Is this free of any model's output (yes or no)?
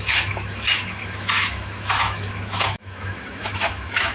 no